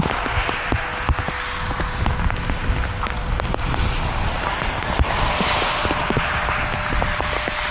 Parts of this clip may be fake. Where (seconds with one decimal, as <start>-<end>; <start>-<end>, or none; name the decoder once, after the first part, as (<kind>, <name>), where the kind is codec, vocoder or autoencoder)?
none